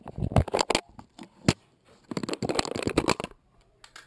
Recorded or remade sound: recorded